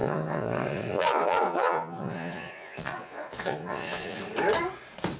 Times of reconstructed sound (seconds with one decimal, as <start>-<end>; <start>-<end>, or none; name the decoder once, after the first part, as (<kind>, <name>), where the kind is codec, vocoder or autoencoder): 0.0-4.2 (vocoder, Vocos)